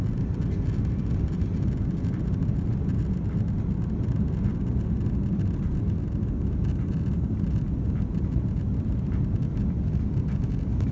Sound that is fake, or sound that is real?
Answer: real